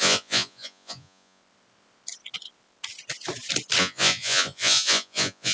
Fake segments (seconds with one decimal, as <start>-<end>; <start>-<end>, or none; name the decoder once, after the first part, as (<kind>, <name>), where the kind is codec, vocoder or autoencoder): 0.0-1.4 (vocoder, Vocos); 3.8-5.5